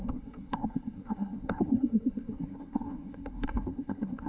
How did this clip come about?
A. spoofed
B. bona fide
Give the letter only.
A